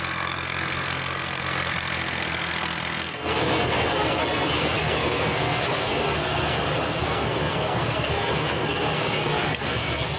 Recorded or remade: remade